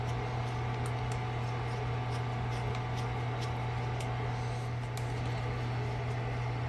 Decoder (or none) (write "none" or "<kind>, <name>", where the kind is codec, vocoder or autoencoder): none